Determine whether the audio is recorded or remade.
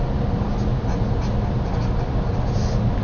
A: recorded